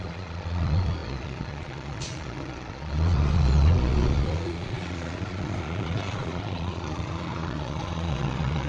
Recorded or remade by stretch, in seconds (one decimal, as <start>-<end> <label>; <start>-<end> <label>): 0.0-8.7 remade